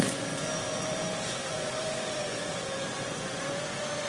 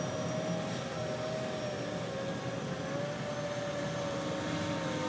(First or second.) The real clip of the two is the second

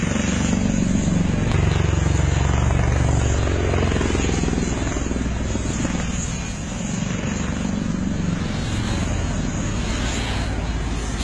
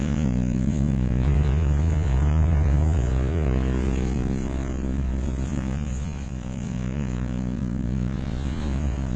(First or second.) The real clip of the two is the first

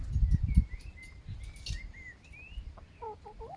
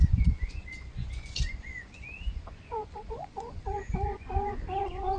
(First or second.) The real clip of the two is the first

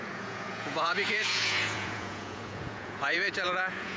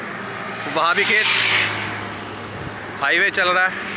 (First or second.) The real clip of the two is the second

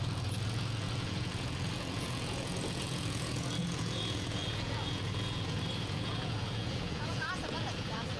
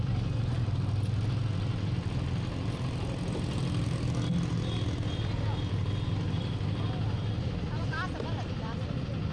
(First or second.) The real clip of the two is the second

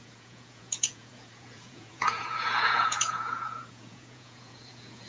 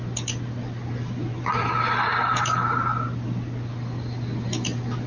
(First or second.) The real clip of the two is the second